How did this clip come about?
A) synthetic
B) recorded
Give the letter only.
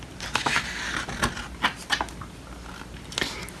B